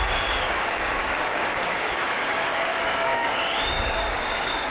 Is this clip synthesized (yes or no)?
yes